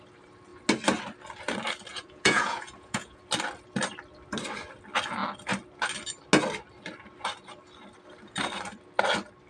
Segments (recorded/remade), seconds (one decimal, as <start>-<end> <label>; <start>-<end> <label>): 0.0-1.9 recorded; 1.9-3.2 remade; 3.2-9.5 recorded